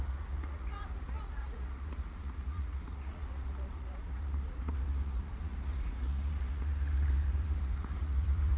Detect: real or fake fake